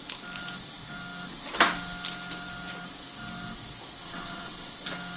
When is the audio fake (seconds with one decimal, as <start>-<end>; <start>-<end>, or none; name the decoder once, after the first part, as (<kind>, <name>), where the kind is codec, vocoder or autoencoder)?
4.0-4.7 (vocoder, WaveNeXt)